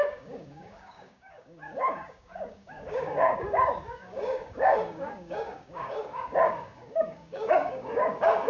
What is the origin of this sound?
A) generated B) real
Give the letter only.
A